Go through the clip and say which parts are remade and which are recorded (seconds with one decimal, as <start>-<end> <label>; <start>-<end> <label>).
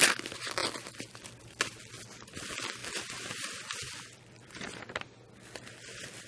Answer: 0.0-6.3 recorded